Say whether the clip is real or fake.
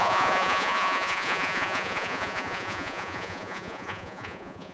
fake